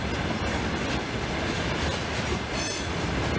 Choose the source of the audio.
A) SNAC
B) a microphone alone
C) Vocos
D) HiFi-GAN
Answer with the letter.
B